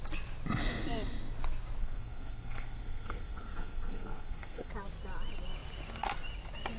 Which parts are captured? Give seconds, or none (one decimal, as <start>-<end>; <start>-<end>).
0.0-1.8; 4.7-6.8